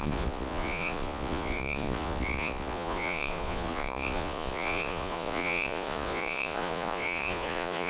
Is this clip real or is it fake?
fake